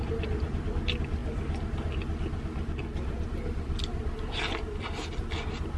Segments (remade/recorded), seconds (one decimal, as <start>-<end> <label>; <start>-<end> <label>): 0.0-0.7 remade; 0.7-5.8 recorded